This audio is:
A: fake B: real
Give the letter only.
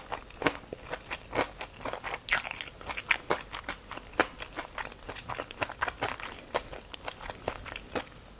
B